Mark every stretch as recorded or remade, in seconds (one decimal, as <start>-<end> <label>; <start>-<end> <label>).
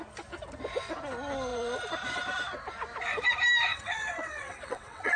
0.0-3.7 recorded; 3.7-5.2 remade